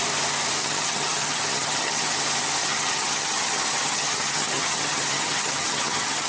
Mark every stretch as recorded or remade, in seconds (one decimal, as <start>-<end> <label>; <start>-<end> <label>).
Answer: 0.0-0.6 recorded; 0.6-2.1 remade; 2.1-2.6 recorded; 2.6-6.3 remade